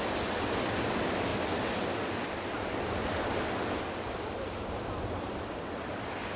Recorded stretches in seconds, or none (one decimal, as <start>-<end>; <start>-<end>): 0.0-6.4